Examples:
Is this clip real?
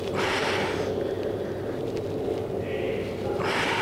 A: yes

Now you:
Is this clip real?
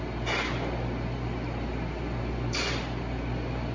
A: yes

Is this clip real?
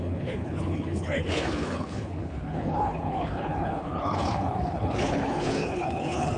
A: no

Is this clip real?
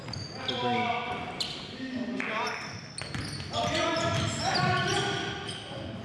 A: yes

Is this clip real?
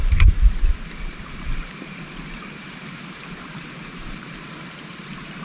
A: no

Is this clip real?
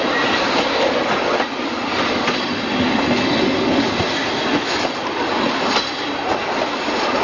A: yes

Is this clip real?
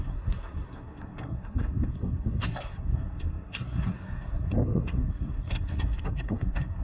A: no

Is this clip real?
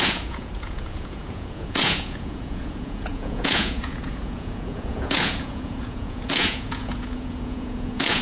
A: no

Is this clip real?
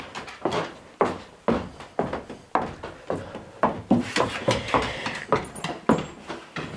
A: yes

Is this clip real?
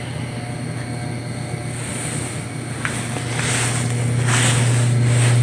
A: yes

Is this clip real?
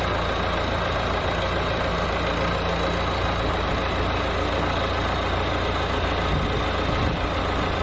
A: yes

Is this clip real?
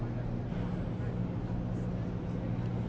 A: yes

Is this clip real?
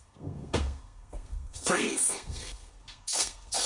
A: no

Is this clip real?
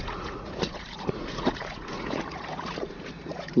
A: no